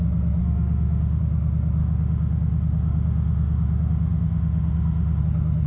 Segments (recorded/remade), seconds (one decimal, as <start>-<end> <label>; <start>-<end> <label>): 0.0-0.4 recorded; 0.4-1.2 remade; 1.2-1.8 recorded; 1.8-5.2 remade; 5.2-5.7 recorded